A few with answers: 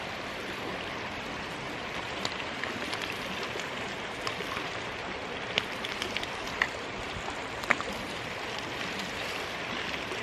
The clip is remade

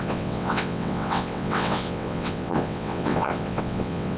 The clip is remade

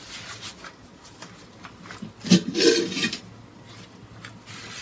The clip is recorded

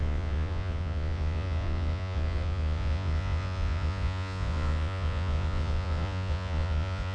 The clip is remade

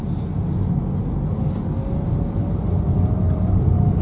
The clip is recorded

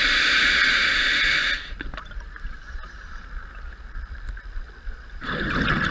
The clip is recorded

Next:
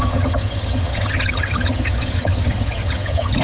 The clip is remade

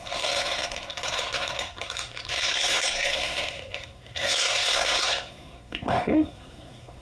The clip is remade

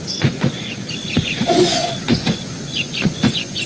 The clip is remade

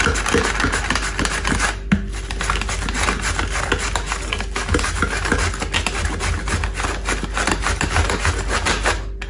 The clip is recorded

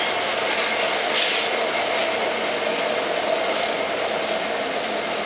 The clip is recorded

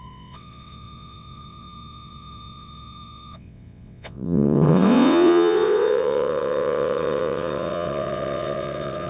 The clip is remade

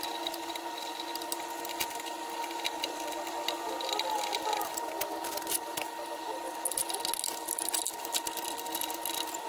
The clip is recorded